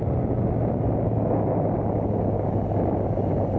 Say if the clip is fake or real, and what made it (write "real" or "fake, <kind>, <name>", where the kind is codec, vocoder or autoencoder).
real